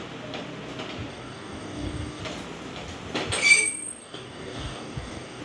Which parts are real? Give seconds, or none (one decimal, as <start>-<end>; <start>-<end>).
0.0-1.1; 2.2-4.0